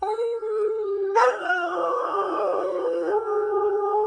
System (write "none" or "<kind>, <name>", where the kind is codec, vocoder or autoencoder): codec, SNAC